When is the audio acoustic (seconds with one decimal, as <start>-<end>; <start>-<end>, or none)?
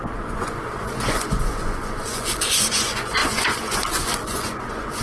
none